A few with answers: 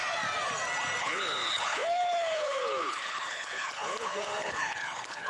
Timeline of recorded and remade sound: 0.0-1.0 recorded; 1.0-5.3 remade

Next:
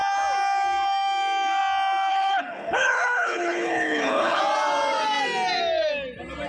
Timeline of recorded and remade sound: 0.0-2.1 recorded; 2.1-4.4 remade; 4.4-6.5 recorded

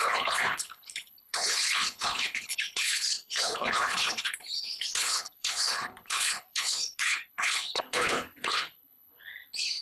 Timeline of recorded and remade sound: 0.0-9.8 remade

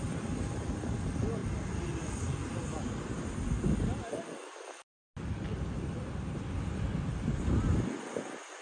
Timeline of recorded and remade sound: 0.0-8.6 recorded

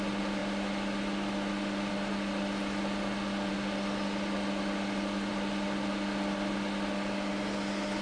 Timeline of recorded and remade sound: 0.0-8.0 recorded

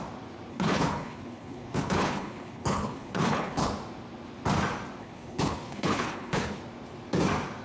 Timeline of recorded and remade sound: 0.0-0.5 recorded; 0.5-3.7 remade; 3.7-5.0 recorded; 5.0-6.6 remade; 6.6-7.6 recorded

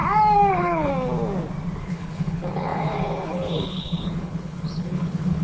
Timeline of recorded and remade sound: 0.0-0.5 recorded; 0.5-0.9 remade; 0.9-1.8 recorded; 1.8-5.4 remade

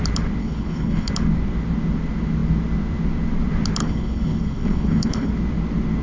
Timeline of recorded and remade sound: 0.0-0.4 recorded; 0.4-1.1 remade; 1.1-3.8 recorded; 3.8-5.3 remade; 5.3-6.0 recorded